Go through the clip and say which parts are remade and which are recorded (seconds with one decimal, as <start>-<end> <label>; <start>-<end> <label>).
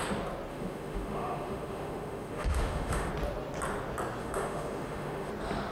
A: 0.0-0.5 recorded; 0.5-3.1 remade; 3.1-4.2 recorded; 4.2-5.3 remade; 5.3-5.7 recorded